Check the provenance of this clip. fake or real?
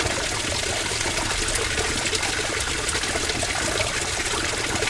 real